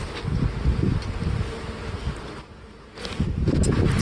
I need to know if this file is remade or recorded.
recorded